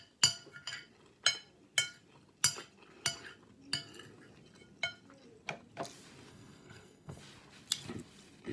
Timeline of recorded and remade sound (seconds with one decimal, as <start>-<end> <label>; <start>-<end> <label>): 0.0-6.3 recorded; 6.3-7.2 remade; 7.2-8.5 recorded